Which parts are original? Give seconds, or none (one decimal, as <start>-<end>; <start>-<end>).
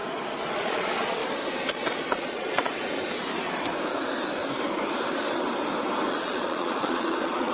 0.0-0.5; 1.2-1.7; 2.7-6.1